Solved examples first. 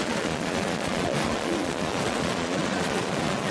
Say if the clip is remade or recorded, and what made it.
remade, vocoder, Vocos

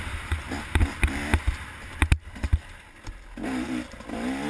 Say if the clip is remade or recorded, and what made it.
recorded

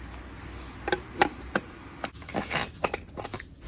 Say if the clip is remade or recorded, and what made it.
recorded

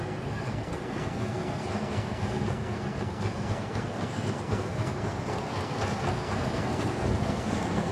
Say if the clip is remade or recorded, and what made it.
remade, codec, SNAC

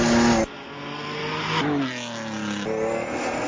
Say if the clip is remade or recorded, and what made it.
recorded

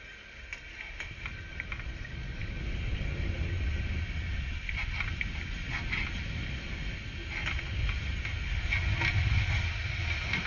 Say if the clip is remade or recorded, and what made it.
recorded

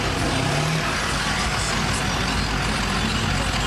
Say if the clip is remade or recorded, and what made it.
recorded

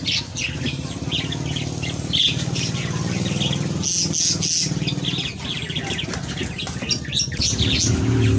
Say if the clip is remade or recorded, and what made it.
recorded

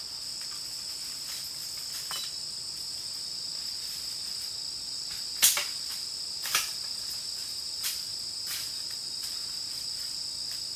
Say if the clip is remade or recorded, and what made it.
recorded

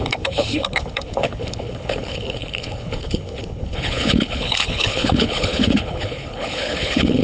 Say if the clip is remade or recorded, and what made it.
remade, codec, HILCodec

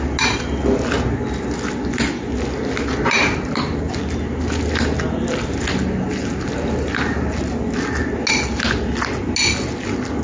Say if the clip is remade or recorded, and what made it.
recorded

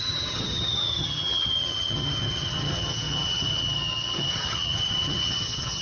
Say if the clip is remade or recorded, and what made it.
remade, vocoder, HiFi-GAN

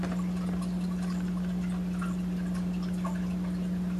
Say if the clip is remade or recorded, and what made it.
recorded